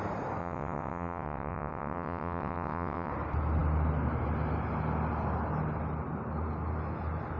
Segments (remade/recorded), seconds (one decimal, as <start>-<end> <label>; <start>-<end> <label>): 0.0-0.4 recorded; 0.4-3.1 remade; 3.1-7.4 recorded